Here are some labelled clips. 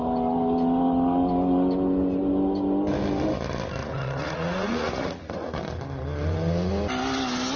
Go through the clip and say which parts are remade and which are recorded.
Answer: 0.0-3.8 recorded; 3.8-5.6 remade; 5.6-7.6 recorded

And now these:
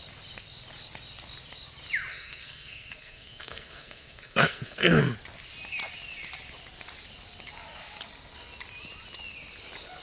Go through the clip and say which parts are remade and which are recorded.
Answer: 0.0-2.1 recorded; 2.1-5.0 remade; 5.0-10.0 recorded

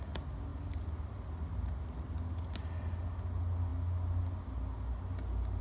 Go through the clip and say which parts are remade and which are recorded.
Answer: 0.0-5.6 recorded

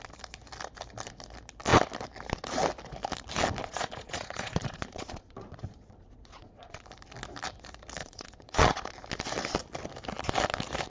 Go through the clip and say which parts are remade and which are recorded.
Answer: 0.0-3.6 recorded; 3.6-6.8 remade; 6.8-8.0 recorded; 8.0-8.9 remade; 8.9-10.9 recorded

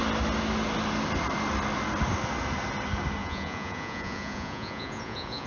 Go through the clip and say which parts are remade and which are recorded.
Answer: 0.0-3.2 recorded; 3.2-5.5 remade

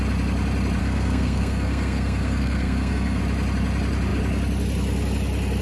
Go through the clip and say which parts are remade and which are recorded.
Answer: 0.0-0.8 recorded; 0.8-3.2 remade; 3.2-5.6 recorded

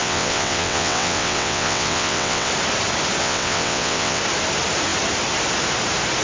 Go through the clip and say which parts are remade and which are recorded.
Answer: 0.0-2.5 remade; 2.5-3.2 recorded; 3.2-4.2 remade; 4.2-6.2 recorded